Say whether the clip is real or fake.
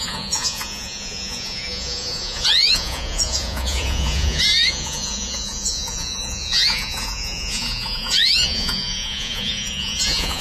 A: fake